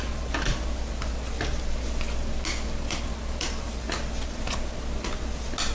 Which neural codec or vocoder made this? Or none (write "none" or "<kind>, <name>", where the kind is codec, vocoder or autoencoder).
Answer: none